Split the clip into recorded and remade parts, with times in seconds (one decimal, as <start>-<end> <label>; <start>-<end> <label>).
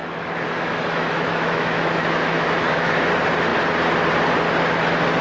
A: 0.0-3.1 remade; 3.1-5.2 recorded